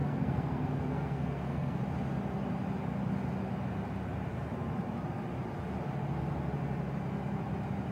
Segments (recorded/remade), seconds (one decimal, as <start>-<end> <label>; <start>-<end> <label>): 0.0-1.8 remade; 1.8-7.9 recorded